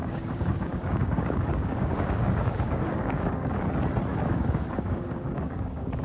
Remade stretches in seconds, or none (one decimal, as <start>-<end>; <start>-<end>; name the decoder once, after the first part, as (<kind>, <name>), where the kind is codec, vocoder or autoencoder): 0.0-3.6 (codec, DAC); 4.1-6.0